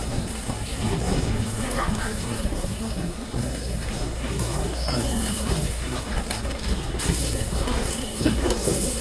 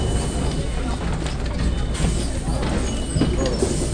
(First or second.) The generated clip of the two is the first